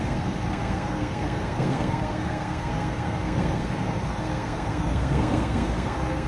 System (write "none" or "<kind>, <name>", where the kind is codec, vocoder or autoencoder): codec, SNAC